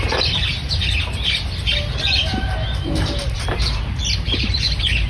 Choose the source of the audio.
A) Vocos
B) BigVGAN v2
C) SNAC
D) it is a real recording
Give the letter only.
D